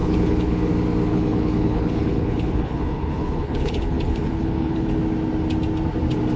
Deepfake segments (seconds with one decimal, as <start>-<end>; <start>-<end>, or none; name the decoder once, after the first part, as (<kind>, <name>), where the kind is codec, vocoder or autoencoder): 0.0-0.7 (codec, HILCodec); 1.1-4.9